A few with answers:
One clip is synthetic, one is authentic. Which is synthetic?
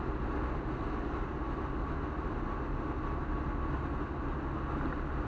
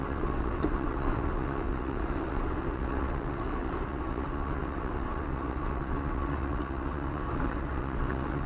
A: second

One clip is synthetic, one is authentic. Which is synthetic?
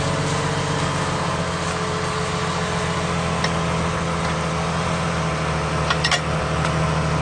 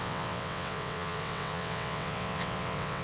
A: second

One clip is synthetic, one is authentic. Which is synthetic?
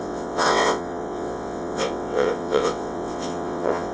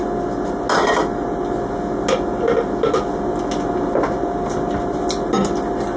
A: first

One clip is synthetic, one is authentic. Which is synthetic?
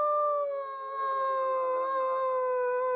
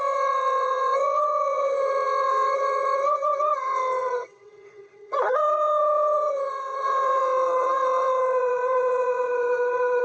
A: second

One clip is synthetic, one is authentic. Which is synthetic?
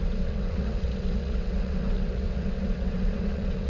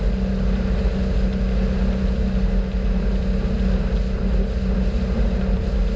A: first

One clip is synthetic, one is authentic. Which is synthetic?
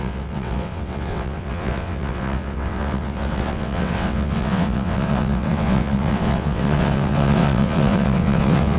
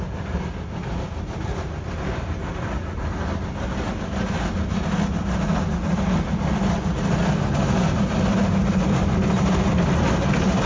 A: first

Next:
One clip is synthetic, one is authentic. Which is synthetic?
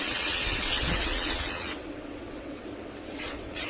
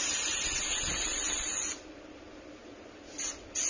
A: first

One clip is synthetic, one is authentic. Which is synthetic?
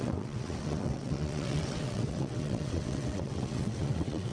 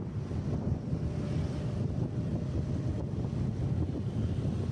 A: first